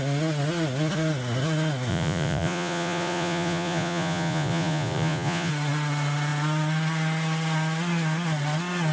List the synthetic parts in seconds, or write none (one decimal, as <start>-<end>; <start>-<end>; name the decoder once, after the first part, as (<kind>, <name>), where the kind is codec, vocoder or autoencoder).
1.9-5.5 (vocoder, Vocos)